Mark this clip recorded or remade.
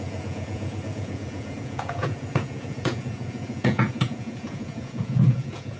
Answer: remade